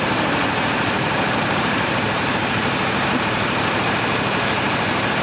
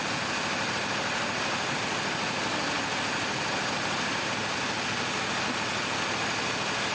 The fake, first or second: first